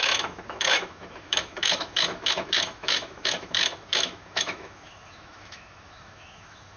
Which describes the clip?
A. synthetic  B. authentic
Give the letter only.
A